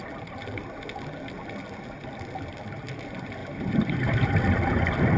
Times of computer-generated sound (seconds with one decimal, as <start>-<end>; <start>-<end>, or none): 3.4-4.3